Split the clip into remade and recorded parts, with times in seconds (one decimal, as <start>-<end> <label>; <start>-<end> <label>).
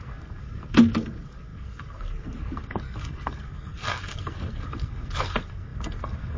0.0-6.4 remade